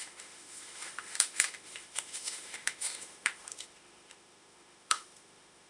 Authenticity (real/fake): fake